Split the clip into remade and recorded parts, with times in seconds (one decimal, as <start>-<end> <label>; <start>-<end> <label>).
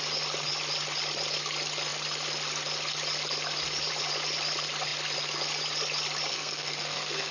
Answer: 0.0-6.3 recorded; 6.3-7.3 remade